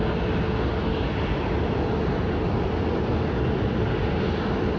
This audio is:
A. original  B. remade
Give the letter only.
A